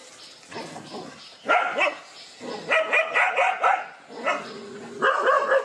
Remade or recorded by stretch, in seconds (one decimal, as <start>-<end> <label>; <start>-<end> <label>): 0.0-5.6 recorded

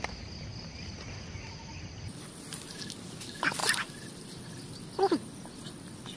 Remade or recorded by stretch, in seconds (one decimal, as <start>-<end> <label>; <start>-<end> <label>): 0.0-6.2 recorded

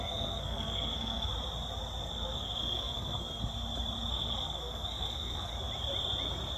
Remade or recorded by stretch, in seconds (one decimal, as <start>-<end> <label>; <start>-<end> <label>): 0.0-1.3 remade; 1.3-2.1 recorded; 2.1-3.4 remade; 3.4-4.1 recorded; 4.1-5.5 remade; 5.5-6.6 recorded

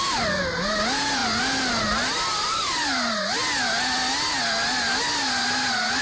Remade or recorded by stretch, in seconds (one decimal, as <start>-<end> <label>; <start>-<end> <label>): 0.0-6.0 recorded